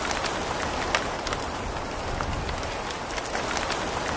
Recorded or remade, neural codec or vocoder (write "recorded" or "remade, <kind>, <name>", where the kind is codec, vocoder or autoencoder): recorded